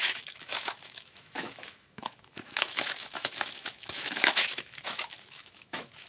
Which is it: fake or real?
fake